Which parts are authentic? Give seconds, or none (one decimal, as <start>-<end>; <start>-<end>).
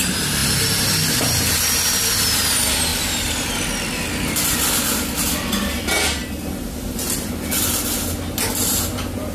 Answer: 0.0-6.2; 7.5-9.3